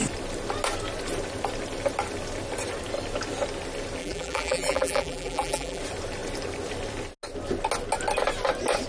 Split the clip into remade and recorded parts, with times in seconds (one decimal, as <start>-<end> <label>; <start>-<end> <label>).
0.0-4.0 recorded; 4.0-5.8 remade; 5.8-8.9 recorded